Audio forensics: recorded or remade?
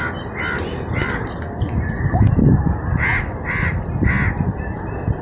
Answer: recorded